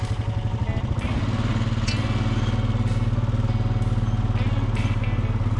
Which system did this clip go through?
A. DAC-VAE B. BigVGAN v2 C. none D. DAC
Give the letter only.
C